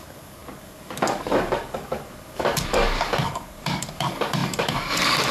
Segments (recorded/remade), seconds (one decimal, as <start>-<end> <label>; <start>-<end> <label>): 0.0-5.3 remade